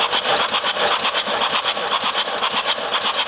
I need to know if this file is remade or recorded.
recorded